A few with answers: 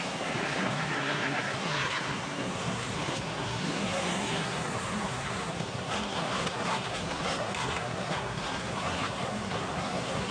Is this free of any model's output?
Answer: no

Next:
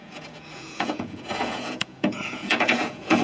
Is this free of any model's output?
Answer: no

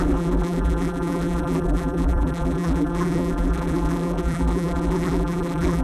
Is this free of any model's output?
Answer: no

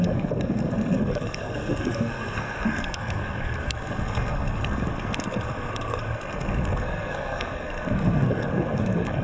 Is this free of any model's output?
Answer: no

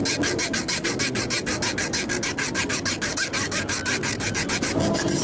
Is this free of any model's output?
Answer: yes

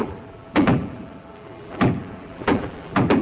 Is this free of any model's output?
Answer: no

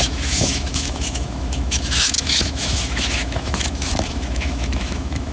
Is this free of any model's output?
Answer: no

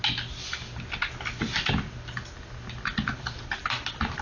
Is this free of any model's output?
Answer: yes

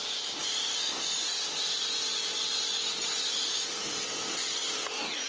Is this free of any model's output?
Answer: yes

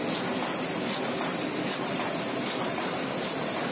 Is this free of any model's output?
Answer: no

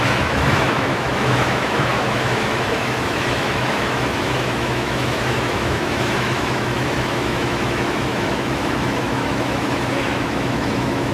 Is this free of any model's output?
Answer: no